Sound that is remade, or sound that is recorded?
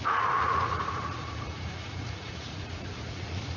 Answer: remade